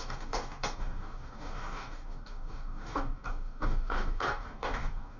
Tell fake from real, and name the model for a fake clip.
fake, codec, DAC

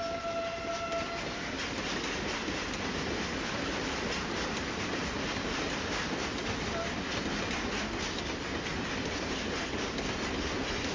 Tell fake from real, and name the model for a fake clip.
real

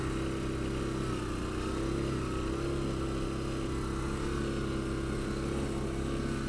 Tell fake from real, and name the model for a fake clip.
real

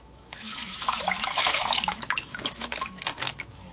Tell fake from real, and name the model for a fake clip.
fake, autoencoder, DAC-VAE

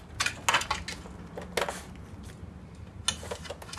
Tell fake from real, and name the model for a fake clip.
real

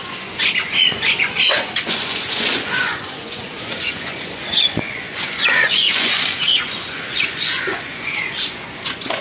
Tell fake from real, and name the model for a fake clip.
fake, vocoder, Vocos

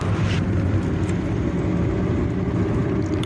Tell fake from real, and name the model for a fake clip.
real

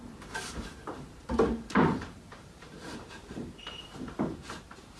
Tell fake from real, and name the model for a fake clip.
fake, vocoder, BigVGAN v2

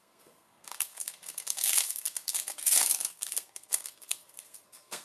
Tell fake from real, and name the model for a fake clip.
fake, codec, SNAC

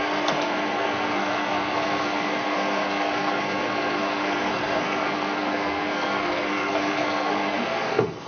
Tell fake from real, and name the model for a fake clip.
fake, codec, SNAC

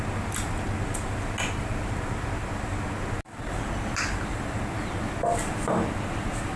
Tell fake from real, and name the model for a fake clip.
real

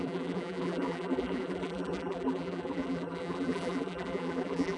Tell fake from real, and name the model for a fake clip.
fake, vocoder, BigVGAN v2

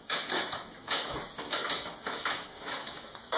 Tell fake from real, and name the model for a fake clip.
fake, autoencoder, DAC-VAE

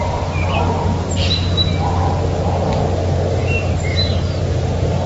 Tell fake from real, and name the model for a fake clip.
real